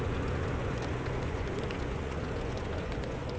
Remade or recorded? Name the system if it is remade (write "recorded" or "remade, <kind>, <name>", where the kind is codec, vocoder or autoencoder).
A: remade, vocoder, Vocos